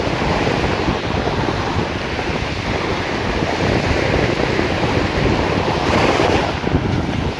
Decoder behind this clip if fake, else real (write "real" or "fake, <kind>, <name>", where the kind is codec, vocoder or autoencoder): real